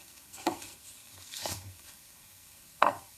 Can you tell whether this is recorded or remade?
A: remade